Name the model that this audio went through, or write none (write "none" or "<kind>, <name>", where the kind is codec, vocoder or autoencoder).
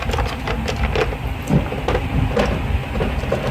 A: none